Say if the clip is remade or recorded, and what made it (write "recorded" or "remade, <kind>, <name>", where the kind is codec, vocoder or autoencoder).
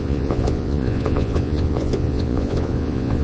remade, vocoder, Vocos